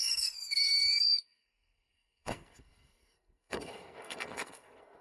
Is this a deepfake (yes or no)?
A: yes